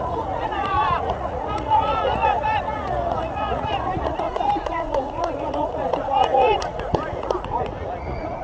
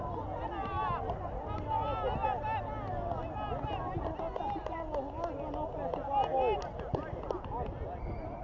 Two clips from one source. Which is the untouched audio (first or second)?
second